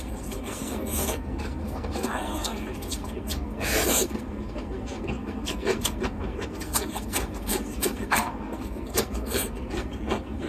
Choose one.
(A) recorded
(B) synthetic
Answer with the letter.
B